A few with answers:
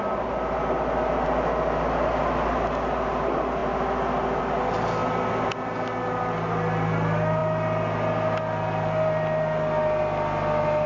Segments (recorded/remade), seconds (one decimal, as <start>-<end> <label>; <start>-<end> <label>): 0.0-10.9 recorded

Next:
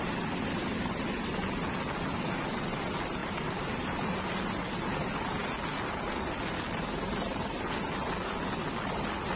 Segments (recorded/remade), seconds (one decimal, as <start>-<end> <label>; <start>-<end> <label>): 0.0-3.2 recorded; 3.2-4.2 remade; 4.2-9.3 recorded

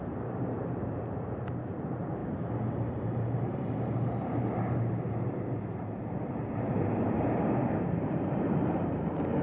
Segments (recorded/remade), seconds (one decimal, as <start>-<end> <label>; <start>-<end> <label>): 0.0-9.4 remade